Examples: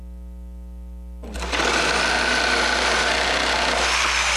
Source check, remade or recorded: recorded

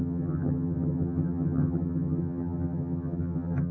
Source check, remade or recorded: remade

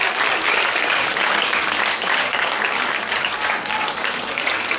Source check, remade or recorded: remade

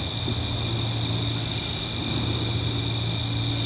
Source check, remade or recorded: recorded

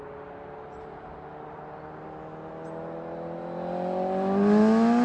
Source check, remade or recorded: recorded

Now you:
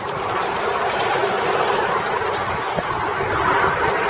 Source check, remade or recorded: recorded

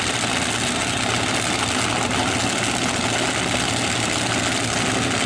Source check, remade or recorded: recorded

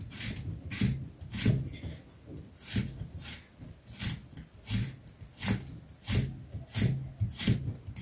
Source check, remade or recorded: recorded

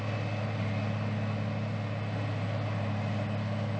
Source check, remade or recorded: recorded